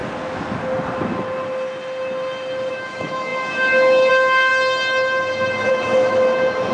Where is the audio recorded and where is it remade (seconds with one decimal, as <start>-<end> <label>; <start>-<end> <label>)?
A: 0.0-2.7 recorded; 2.7-4.5 remade; 4.5-5.7 recorded; 5.7-6.7 remade